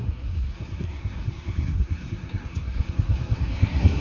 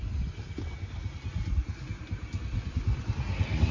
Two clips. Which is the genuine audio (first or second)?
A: second